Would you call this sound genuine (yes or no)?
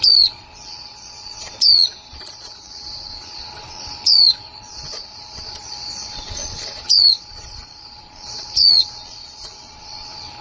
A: no